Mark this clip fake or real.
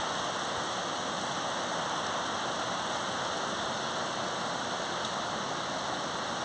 real